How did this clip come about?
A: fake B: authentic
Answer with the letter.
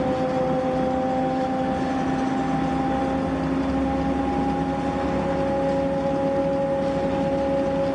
B